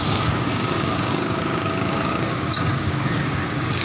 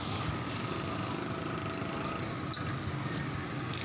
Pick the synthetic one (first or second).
first